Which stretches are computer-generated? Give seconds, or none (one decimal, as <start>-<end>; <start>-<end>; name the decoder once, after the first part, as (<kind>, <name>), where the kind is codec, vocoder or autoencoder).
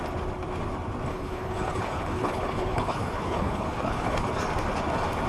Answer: 1.1-4.3 (codec, HILCodec)